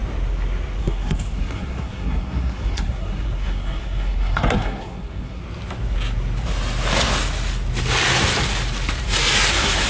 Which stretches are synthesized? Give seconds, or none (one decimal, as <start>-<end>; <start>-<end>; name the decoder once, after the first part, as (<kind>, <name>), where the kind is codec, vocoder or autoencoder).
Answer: 0.8-5.4 (codec, SNAC); 9.5-9.9